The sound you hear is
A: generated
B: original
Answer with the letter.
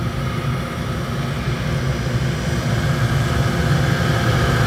B